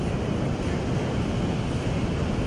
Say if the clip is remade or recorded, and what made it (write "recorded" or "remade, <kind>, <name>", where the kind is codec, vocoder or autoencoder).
recorded